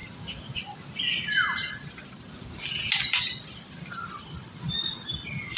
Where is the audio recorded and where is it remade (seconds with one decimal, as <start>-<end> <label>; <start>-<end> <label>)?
0.0-3.4 recorded; 3.4-5.6 remade